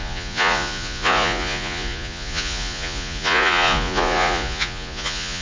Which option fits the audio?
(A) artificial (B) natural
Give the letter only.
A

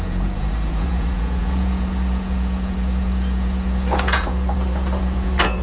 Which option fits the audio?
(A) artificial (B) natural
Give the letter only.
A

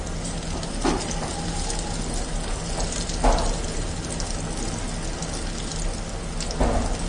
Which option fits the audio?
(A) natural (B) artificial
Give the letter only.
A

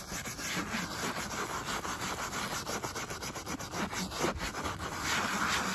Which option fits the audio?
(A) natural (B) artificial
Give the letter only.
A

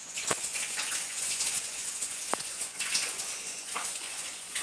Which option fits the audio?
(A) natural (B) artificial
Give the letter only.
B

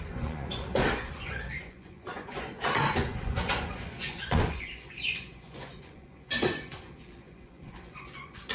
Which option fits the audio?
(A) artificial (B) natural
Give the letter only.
A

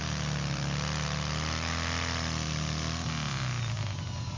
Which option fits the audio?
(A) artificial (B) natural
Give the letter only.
B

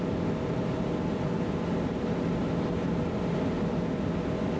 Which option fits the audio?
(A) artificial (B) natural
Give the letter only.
B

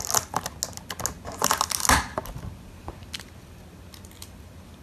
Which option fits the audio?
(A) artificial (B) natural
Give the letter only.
B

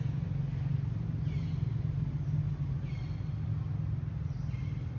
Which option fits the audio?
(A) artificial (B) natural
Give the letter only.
B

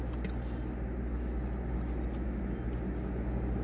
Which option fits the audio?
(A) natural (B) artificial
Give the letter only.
A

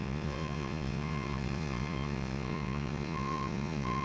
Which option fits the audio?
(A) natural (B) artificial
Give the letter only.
B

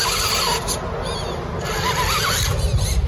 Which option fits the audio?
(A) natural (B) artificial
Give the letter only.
A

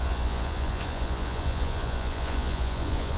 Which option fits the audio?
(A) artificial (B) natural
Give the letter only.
A